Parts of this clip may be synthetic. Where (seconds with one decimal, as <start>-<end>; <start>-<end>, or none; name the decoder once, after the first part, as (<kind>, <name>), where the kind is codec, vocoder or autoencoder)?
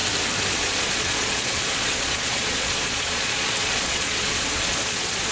0.5-5.3 (vocoder, Vocos)